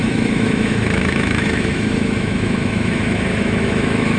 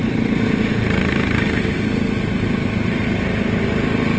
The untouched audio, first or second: second